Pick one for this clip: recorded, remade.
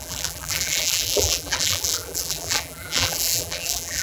remade